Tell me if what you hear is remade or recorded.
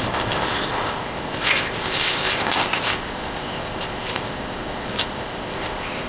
remade